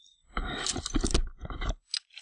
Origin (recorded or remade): recorded